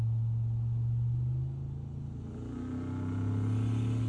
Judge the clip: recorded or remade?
recorded